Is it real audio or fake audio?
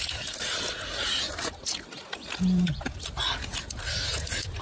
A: real